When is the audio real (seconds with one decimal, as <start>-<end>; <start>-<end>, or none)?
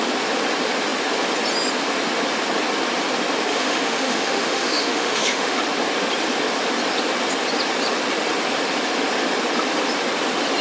0.0-3.5; 5.6-10.6